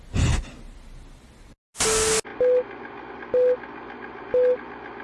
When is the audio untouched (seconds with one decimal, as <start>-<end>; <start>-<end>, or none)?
0.0-5.0